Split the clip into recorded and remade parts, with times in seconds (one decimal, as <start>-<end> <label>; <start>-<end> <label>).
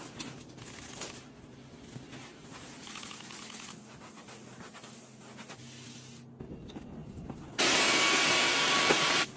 0.0-9.4 recorded